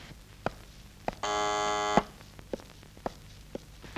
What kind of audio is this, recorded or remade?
recorded